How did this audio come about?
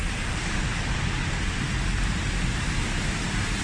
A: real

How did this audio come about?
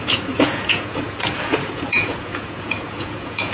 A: fake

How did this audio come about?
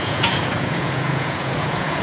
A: fake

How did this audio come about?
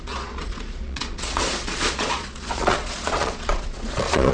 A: fake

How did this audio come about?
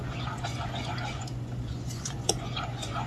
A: fake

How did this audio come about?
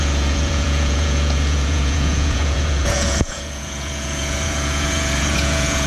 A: fake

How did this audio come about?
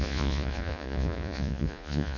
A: fake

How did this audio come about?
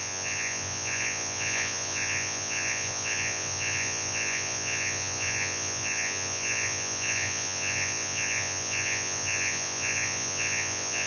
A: fake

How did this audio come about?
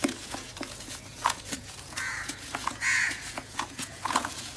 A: fake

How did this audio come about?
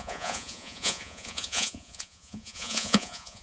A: fake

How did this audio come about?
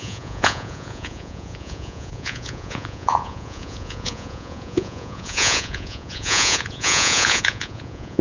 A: fake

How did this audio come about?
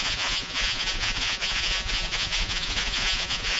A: fake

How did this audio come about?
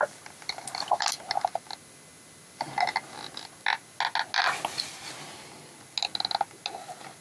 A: real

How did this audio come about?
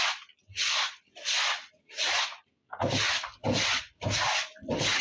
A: real